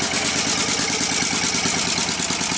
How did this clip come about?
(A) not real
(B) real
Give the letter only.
B